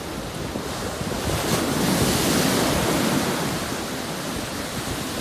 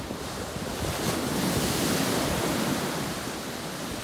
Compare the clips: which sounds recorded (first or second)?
first